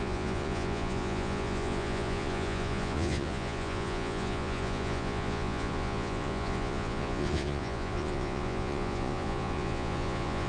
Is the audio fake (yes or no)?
yes